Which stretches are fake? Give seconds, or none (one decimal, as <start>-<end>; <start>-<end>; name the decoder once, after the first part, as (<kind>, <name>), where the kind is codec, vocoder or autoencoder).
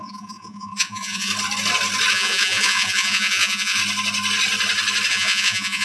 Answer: 0.0-1.3 (vocoder, Vocos); 2.1-3.8; 5.1-5.8